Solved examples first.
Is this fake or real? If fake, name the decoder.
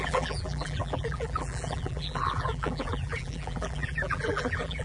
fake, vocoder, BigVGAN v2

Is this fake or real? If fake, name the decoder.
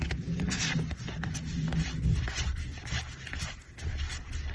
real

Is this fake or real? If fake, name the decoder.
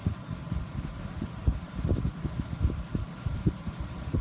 fake, vocoder, BigVGAN v2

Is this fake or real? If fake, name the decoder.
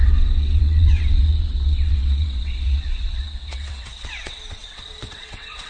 fake, vocoder, WaveNeXt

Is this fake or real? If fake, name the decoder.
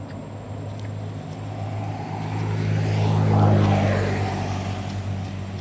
real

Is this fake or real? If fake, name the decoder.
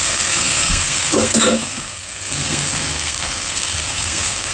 fake, codec, SNAC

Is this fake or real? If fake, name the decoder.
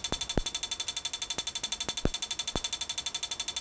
real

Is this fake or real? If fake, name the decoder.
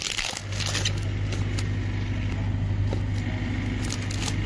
real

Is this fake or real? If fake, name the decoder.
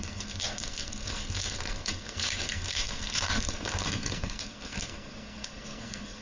fake, codec, SNAC